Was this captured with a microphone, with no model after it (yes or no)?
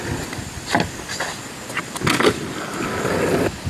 yes